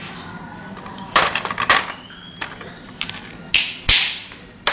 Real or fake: real